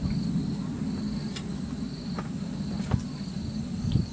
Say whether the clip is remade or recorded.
recorded